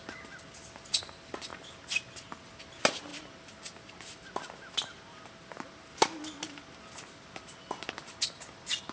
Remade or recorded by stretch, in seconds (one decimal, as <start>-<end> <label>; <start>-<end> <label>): 0.0-8.9 recorded